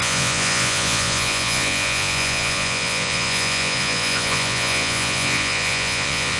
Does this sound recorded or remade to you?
remade